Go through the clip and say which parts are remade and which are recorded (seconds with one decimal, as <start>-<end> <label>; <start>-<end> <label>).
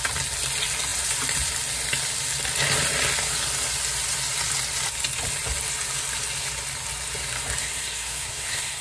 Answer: 0.0-7.6 recorded; 7.6-8.8 remade